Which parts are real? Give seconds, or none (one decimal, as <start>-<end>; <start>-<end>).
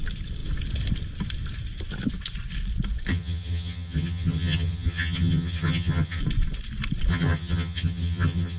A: 0.0-3.1; 6.2-7.1